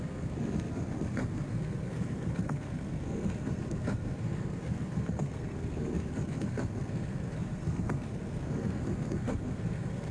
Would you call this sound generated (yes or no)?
yes